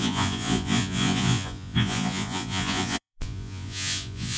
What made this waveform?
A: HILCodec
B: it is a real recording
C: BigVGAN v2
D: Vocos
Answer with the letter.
D